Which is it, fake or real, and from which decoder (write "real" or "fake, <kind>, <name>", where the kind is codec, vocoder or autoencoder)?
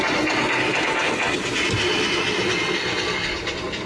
real